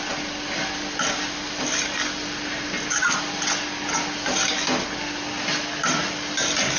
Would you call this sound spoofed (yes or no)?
no